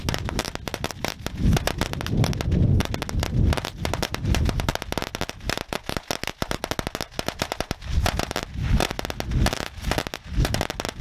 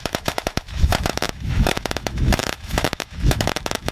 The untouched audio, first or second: first